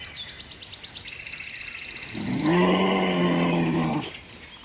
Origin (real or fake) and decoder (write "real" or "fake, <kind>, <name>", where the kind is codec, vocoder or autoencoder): real